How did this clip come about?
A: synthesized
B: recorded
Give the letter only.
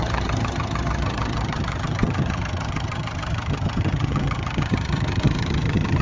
A